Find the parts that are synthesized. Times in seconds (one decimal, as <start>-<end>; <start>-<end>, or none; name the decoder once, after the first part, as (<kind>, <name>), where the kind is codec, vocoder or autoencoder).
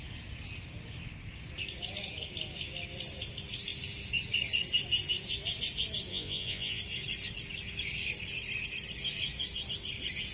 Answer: 6.1-6.8 (vocoder, Vocos)